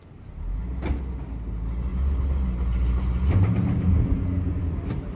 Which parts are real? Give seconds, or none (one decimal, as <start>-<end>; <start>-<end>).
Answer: 0.0-1.9; 4.6-5.2